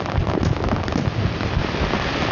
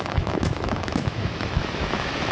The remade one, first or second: second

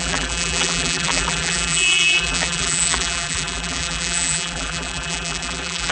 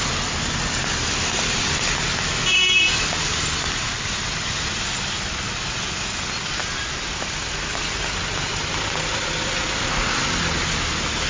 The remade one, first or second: first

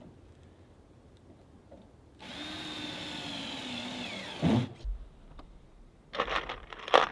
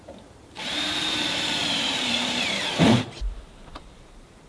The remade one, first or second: second